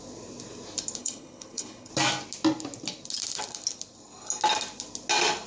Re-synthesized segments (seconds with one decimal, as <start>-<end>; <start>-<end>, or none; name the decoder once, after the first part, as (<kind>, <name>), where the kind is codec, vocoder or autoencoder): 1.0-1.9 (codec, HILCodec)